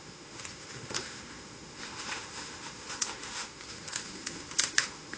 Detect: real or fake fake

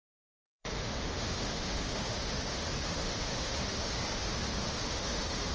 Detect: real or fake fake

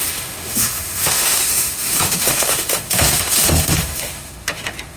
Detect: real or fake fake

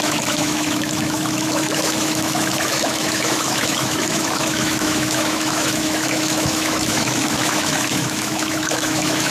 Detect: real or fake fake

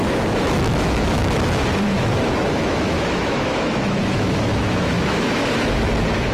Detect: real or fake fake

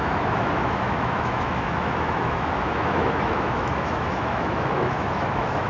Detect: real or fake fake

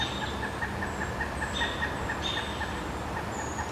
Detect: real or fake real